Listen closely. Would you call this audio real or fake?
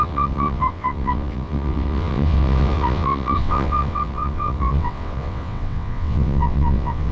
fake